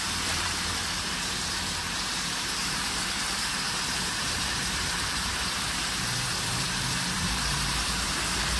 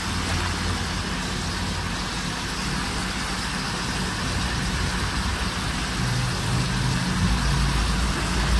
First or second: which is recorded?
second